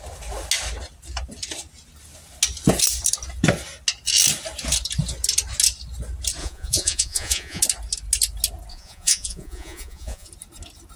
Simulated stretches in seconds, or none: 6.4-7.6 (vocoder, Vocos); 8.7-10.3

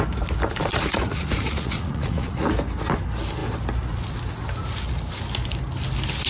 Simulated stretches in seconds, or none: 0.7-2.5 (vocoder, Vocos)

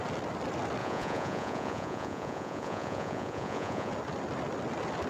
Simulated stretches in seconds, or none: 0.8-3.9 (vocoder, Vocos)

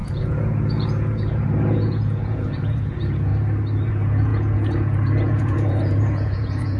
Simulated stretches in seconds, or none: 0.0-3.3 (vocoder, Vocos); 3.9-6.8

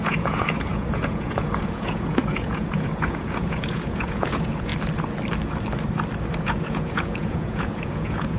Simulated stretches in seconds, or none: 0.0-4.7 (vocoder, Vocos); 6.4-8.4

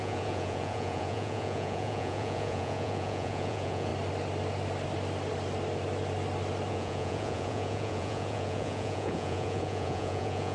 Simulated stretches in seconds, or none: 0.0-3.9 (vocoder, Vocos); 6.7-10.5

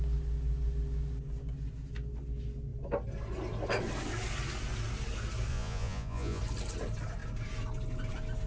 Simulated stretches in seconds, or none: 5.5-6.4 (vocoder, Vocos)